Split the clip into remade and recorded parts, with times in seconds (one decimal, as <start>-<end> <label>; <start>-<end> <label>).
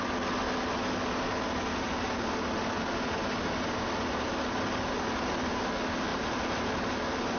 0.0-6.1 recorded; 6.1-7.4 remade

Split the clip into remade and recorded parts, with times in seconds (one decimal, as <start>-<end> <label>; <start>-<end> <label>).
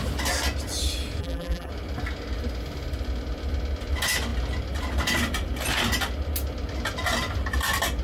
0.0-1.2 recorded; 1.2-1.7 remade; 1.7-8.0 recorded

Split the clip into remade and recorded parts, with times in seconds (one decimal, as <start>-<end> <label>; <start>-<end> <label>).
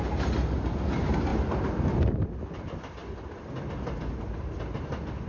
0.0-5.3 recorded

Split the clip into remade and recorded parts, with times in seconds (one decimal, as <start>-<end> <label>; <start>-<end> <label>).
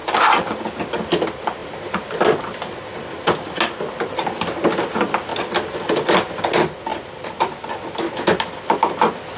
0.0-9.4 recorded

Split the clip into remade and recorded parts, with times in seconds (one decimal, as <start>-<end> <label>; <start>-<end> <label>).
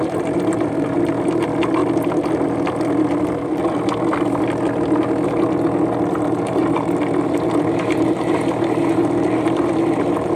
0.0-1.8 remade; 1.8-6.1 recorded; 6.1-10.4 remade